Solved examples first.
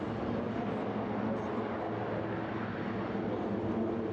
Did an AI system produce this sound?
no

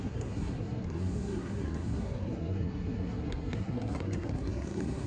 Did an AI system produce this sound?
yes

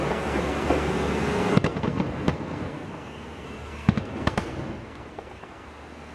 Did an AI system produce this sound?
yes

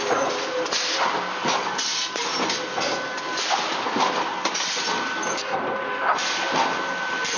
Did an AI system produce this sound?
no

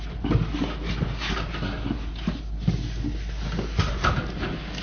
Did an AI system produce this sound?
no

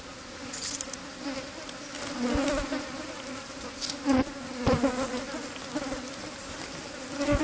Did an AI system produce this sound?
no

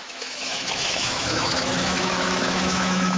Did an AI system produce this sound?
yes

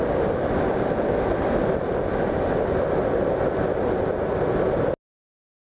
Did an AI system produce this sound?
no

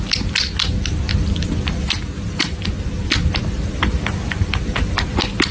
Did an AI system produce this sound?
no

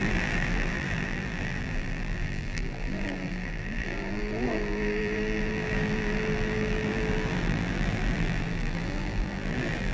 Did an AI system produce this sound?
yes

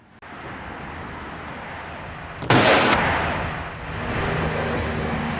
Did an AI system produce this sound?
no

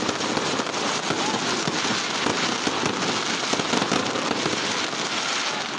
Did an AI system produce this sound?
no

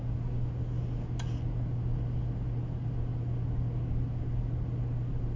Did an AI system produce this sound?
no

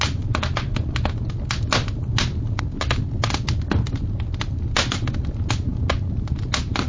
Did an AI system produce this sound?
no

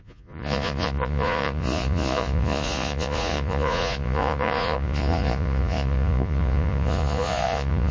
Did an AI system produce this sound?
yes